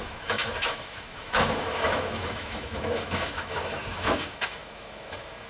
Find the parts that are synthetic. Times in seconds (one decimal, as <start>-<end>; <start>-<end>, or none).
0.0-5.5